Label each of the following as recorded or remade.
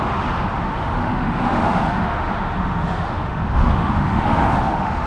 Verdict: remade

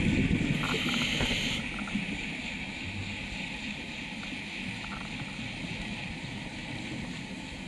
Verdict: recorded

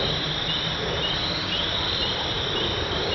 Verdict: remade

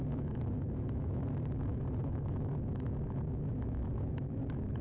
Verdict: remade